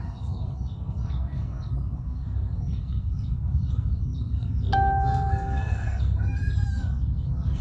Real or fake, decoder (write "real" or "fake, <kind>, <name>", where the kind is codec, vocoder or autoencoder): fake, codec, SNAC